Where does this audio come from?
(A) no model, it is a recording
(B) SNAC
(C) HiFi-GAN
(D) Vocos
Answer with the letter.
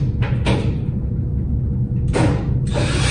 A